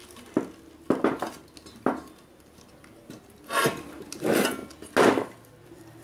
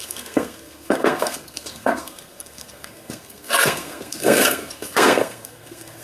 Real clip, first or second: first